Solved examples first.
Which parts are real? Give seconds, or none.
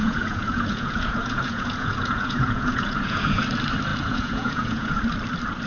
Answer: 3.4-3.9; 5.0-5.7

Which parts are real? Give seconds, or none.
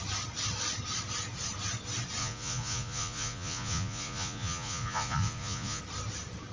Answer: 0.0-2.2; 5.8-6.5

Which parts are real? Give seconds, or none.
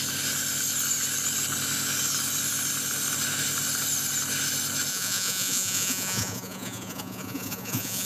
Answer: 0.0-4.9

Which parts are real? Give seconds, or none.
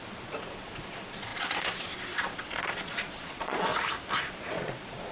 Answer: 3.7-4.2